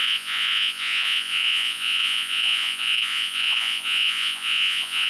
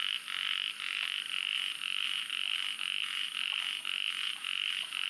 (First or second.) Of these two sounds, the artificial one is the first